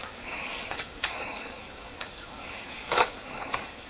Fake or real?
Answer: fake